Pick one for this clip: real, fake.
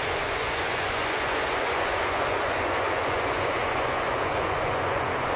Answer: fake